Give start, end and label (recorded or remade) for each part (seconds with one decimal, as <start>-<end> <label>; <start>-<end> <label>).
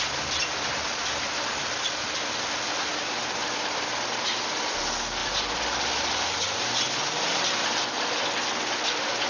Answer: 0.0-9.3 recorded